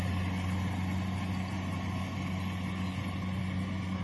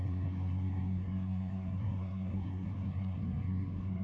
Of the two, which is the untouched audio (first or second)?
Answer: first